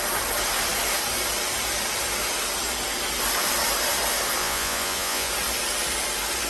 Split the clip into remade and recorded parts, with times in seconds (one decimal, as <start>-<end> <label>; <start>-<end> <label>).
0.0-4.4 recorded; 4.4-5.3 remade; 5.3-6.5 recorded